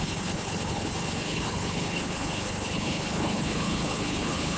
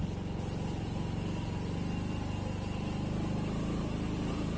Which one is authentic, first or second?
second